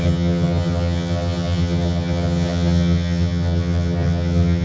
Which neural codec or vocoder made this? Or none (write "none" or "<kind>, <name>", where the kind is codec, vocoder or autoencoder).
vocoder, HiFi-GAN